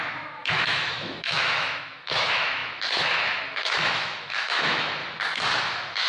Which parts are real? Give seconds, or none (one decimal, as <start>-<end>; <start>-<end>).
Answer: 5.0-5.6